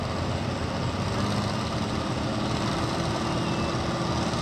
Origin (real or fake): real